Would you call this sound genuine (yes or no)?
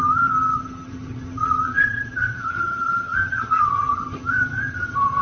no